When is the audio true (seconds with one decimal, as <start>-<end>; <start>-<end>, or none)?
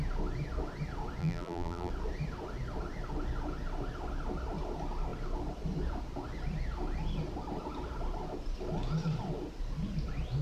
0.0-1.2; 1.9-10.4